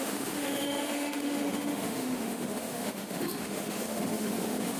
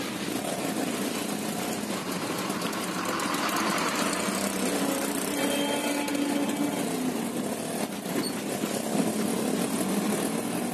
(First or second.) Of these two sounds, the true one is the second